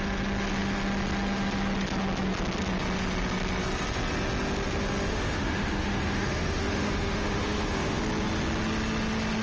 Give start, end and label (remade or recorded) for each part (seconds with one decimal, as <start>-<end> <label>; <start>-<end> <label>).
0.0-5.1 recorded; 5.1-8.0 remade; 8.0-9.4 recorded